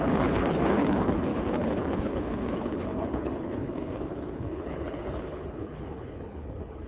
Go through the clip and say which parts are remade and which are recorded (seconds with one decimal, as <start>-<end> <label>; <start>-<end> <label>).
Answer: 0.0-6.9 remade

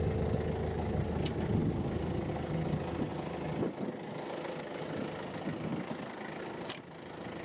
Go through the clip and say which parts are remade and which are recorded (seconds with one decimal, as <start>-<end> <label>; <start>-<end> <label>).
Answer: 0.0-7.4 recorded